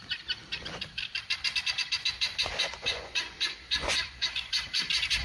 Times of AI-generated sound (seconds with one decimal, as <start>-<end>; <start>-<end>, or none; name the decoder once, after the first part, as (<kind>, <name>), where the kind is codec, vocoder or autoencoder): 2.7-4.7 (vocoder, Vocos)